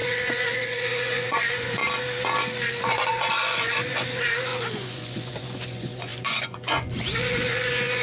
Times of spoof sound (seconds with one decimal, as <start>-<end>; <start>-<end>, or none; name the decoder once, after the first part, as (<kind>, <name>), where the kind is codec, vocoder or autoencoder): 0.0-1.8 (vocoder, Vocos); 2.8-8.0